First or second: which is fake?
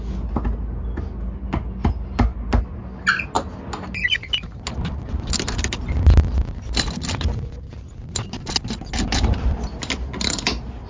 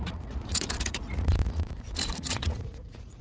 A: second